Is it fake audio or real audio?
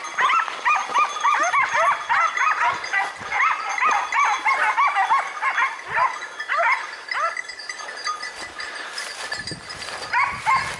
real